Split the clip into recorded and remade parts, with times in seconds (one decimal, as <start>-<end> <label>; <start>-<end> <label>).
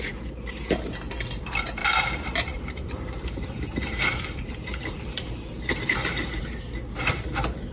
0.0-1.8 recorded; 1.8-6.4 remade; 6.4-7.7 recorded